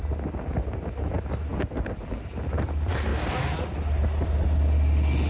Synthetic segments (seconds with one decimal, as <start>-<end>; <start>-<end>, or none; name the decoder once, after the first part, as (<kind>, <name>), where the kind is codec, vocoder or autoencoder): none